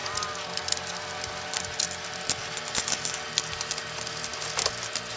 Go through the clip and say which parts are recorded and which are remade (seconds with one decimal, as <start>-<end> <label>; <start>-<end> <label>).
0.0-5.2 recorded